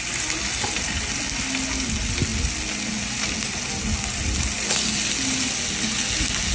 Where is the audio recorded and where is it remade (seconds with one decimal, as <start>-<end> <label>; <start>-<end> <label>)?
0.0-6.5 recorded